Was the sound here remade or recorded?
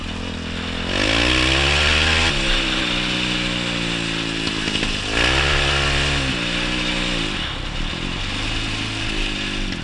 recorded